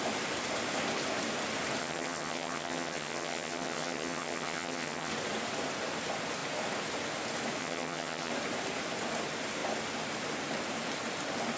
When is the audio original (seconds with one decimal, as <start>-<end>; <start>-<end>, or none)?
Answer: 0.0-1.8; 5.1-7.6; 8.3-11.6